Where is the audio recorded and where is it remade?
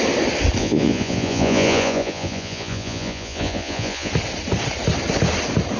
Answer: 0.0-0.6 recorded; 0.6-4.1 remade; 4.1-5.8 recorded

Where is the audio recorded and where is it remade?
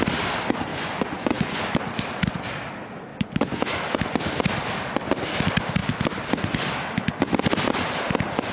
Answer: 0.0-0.7 recorded; 0.7-1.6 remade; 1.6-3.1 recorded; 3.1-3.6 remade; 3.6-8.5 recorded